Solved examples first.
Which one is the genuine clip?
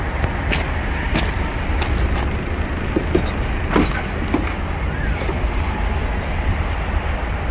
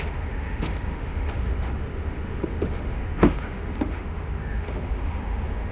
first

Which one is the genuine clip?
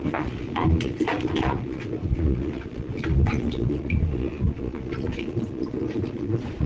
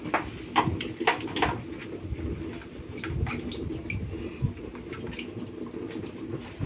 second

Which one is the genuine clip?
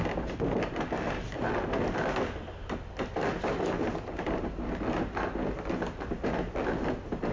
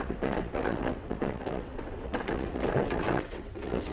first